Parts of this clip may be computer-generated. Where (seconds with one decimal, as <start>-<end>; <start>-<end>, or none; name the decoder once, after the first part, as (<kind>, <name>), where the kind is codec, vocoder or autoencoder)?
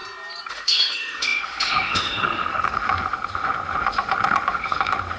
0.5-5.2 (autoencoder, DAC-VAE)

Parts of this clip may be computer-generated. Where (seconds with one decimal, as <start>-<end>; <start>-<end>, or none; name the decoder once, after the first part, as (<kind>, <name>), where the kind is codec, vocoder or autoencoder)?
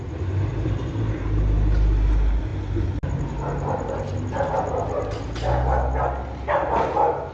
none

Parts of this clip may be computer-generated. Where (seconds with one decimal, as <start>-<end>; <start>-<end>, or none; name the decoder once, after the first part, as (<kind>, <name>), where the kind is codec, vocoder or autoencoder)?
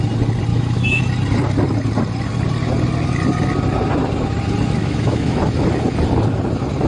0.5-1.0 (autoencoder, DAC-VAE); 4.8-5.4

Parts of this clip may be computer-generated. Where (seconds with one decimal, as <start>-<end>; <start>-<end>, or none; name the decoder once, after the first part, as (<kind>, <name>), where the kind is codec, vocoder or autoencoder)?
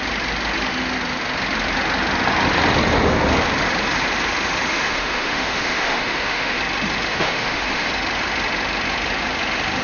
4.7-6.6 (autoencoder, DAC-VAE); 7.1-7.9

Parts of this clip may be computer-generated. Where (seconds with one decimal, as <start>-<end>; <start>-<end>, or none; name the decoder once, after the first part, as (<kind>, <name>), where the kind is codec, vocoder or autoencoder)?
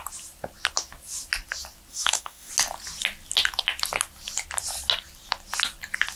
1.9-2.5 (autoencoder, DAC-VAE)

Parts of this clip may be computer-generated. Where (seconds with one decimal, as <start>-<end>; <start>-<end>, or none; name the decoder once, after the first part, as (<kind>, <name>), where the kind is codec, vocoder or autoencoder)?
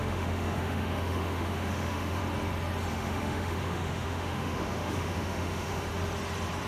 0.0-2.2 (autoencoder, DAC-VAE); 2.9-5.9